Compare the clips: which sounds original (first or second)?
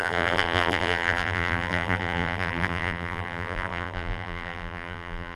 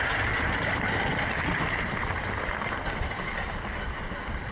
second